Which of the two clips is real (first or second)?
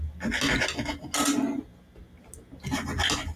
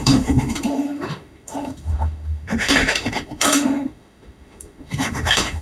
first